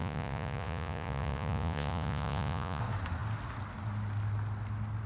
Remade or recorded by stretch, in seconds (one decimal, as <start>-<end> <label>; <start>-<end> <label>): 0.0-2.8 remade; 2.8-5.1 recorded